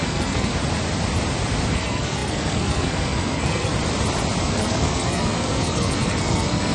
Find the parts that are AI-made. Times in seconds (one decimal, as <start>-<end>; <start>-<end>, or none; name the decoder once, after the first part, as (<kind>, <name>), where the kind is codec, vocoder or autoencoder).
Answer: 0.0-0.5 (codec, SNAC); 1.7-3.7; 4.4-6.7